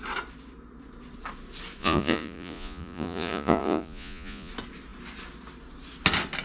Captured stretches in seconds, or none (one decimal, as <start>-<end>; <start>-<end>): 0.0-1.8; 4.5-6.4

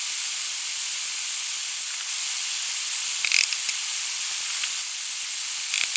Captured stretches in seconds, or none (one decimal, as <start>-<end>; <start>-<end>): 0.0-6.0

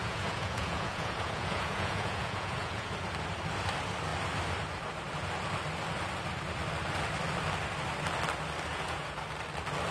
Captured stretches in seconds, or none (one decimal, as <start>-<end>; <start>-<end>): 2.9-8.7; 9.2-9.9